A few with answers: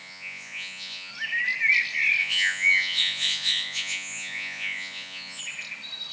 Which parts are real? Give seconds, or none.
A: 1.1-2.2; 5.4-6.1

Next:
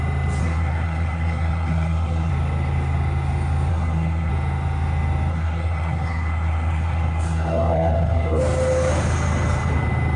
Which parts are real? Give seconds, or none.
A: 0.0-0.4; 2.3-3.7; 4.3-5.3; 8.4-10.2

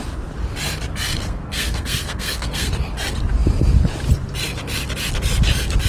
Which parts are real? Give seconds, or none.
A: 0.0-1.2; 2.7-5.9

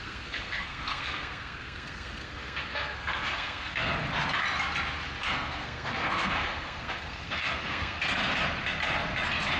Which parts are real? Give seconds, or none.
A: 3.9-5.2; 8.2-9.6